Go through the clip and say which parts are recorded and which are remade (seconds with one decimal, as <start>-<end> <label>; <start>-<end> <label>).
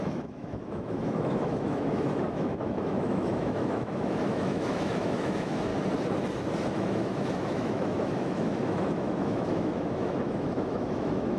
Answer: 0.0-5.7 remade; 5.7-6.7 recorded; 6.7-11.4 remade